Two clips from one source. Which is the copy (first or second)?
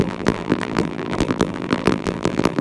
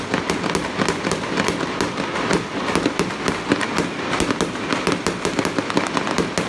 first